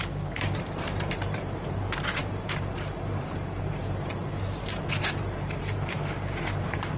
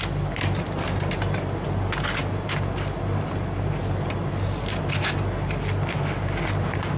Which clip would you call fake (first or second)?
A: first